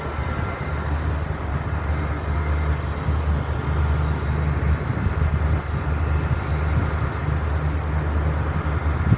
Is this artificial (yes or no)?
no